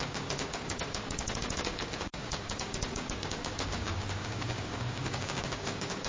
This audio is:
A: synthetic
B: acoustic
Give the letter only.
A